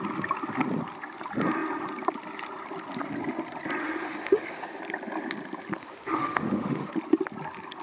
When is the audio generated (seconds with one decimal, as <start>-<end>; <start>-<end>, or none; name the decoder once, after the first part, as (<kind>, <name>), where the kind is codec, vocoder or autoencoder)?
3.8-4.8 (autoencoder, DAC-VAE); 5.8-6.9